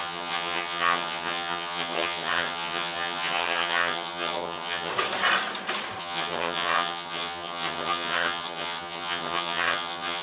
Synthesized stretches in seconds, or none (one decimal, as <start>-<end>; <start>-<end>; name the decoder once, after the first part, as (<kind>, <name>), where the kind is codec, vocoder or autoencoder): 0.0-4.9 (vocoder, HiFi-GAN); 6.0-10.2